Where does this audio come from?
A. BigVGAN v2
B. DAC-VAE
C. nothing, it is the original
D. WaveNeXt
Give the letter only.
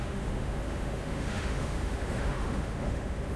B